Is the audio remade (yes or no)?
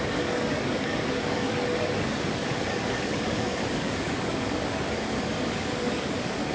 yes